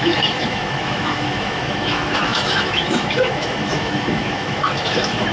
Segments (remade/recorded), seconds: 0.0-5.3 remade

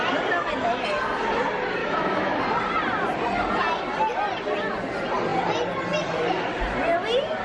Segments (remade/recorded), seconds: 0.0-1.8 recorded; 1.8-2.4 remade; 2.4-7.4 recorded

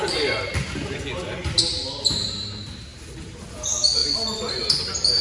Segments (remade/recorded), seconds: 0.0-5.2 recorded